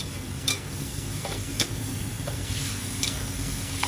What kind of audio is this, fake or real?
fake